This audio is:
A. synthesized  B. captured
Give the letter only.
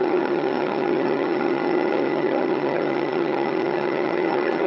A